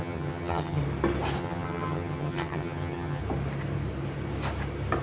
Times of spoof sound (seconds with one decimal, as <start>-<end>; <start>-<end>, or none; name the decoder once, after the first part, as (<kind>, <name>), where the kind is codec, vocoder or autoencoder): 0.0-0.8 (vocoder, HiFi-GAN); 1.4-3.2